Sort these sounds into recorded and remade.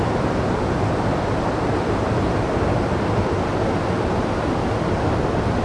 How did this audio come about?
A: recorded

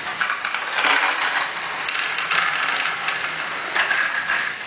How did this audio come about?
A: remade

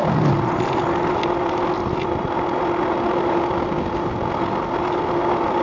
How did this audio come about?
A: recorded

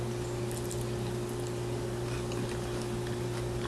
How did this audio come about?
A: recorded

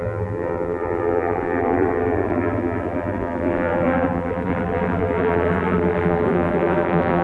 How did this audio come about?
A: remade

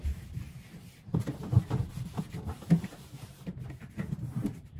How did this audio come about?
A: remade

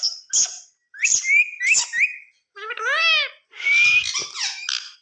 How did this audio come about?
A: recorded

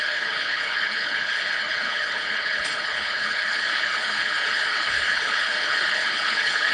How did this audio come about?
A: remade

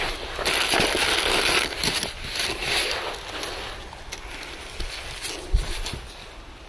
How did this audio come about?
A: recorded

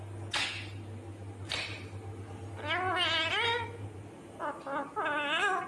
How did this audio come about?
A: recorded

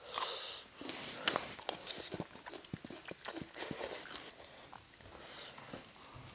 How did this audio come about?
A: recorded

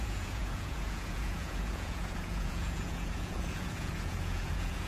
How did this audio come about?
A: remade